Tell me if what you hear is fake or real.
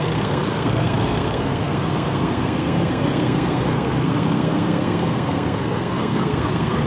fake